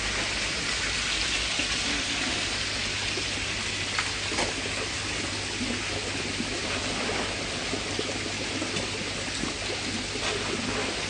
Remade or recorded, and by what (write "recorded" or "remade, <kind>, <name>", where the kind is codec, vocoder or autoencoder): recorded